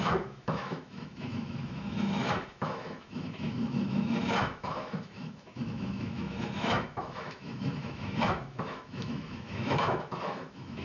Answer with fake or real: fake